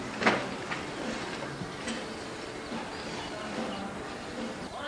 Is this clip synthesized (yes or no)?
no